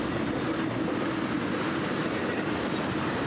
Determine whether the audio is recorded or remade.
recorded